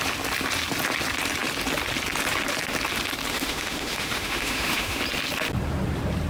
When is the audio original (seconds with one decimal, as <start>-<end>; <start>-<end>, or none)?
0.0-3.3; 5.0-6.3